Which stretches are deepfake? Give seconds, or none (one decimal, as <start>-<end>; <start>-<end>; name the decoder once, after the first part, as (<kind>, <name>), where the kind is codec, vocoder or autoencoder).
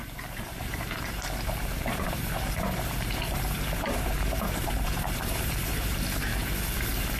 0.0-7.2 (vocoder, BigVGAN v2)